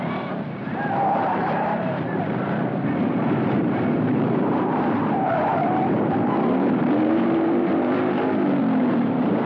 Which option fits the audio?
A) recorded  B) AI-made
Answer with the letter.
B